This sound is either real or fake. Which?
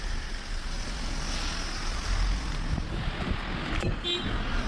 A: real